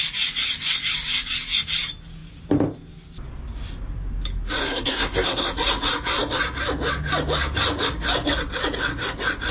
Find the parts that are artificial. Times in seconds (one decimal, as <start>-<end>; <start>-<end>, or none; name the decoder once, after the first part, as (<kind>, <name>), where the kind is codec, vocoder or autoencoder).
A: 4.6-5.5 (codec, SNAC)